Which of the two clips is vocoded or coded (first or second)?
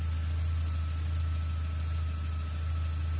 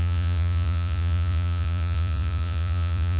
second